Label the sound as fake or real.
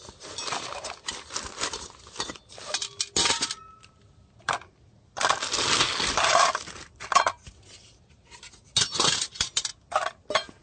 real